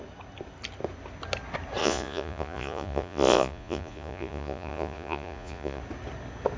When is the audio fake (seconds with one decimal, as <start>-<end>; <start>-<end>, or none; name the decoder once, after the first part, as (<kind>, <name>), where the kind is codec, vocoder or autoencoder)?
1.8-5.8 (vocoder, Vocos)